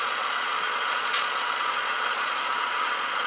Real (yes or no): no